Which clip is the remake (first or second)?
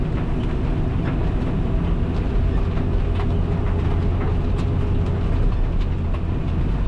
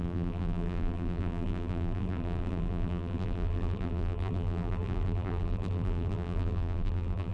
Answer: second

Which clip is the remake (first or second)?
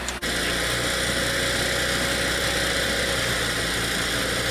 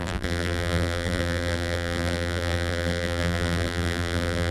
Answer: second